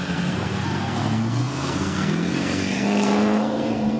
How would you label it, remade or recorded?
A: remade